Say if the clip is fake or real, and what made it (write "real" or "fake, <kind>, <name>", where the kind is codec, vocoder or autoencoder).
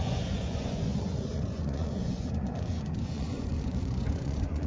fake, vocoder, Vocos